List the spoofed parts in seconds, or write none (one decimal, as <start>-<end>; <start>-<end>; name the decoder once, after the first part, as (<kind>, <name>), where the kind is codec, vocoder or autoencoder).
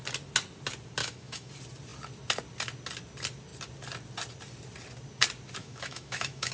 1.0-1.5 (autoencoder, DAC-VAE); 5.6-6.5